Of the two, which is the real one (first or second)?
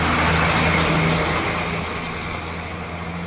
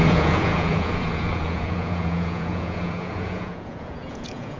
first